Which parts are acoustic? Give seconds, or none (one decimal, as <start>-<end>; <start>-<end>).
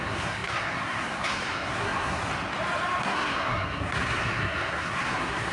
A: 2.2-3.0